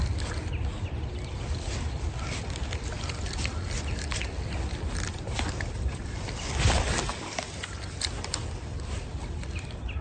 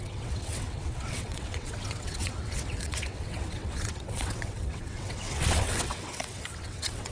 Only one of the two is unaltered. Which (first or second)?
first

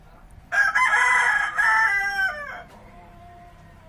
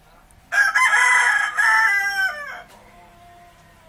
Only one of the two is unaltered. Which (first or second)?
second